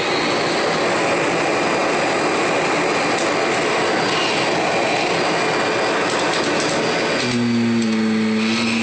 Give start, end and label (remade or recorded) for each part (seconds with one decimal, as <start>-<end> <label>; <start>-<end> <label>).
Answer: 0.0-8.8 recorded